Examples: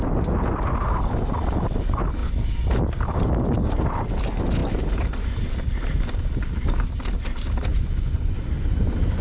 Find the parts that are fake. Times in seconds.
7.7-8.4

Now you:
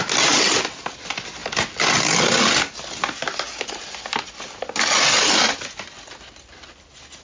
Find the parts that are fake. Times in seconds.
none

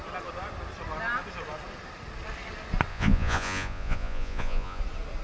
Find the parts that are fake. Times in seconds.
2.9-4.8

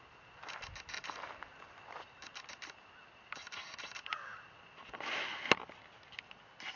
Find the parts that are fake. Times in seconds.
none

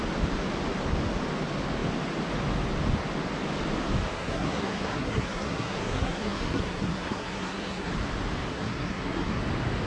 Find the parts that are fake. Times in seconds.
4.1-7.9; 8.5-9.4

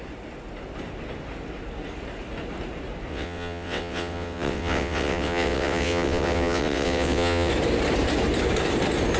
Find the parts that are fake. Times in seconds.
3.1-7.5

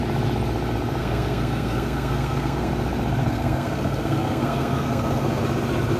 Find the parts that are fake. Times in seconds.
1.0-2.7; 3.2-5.4

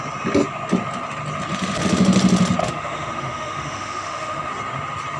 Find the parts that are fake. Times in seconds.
2.6-4.5